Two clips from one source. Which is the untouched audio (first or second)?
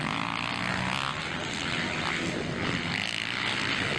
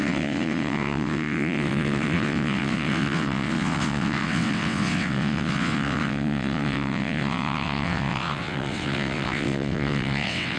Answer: first